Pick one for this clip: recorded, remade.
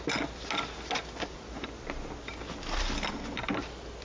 recorded